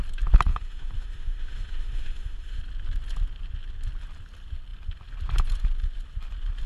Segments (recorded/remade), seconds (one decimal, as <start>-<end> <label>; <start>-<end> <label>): 0.0-0.5 recorded; 0.5-2.6 remade; 2.6-6.7 recorded